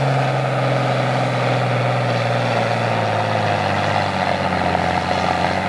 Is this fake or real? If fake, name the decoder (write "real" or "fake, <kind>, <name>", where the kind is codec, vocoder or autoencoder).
real